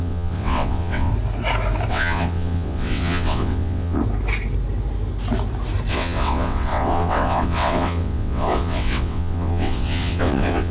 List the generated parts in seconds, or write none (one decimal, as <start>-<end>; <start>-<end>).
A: 0.0-1.1; 1.9-4.0; 5.9-10.7